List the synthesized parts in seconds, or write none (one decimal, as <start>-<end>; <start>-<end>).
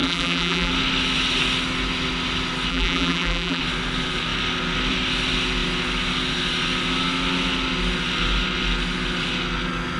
0.0-0.7; 2.7-3.6